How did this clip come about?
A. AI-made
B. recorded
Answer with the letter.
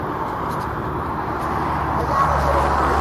B